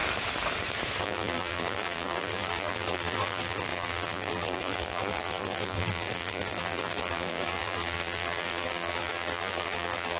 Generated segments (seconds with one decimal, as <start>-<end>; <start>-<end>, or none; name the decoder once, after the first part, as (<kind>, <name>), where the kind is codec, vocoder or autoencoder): 1.0-10.2 (vocoder, BigVGAN v2)

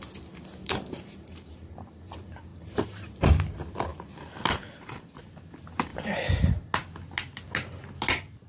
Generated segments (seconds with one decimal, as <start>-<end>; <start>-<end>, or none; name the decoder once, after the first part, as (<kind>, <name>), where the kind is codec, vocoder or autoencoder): 0.6-1.7 (vocoder, BigVGAN v2); 2.5-3.1; 3.9-5.3; 5.9-6.6

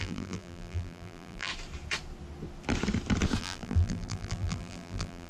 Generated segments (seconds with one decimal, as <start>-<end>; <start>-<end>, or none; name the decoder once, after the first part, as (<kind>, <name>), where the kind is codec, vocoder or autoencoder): 0.0-1.5 (vocoder, BigVGAN v2); 3.4-5.3